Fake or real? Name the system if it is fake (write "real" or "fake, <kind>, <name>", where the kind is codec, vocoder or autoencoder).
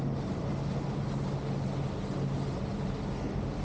real